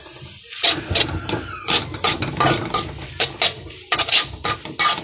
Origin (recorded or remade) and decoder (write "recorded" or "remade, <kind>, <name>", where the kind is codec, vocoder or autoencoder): recorded